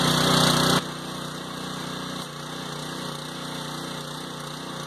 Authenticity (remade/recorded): recorded